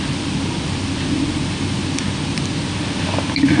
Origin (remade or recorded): recorded